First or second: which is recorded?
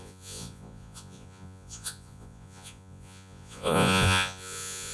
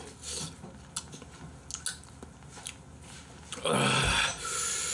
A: second